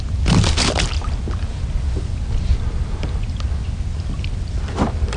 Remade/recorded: recorded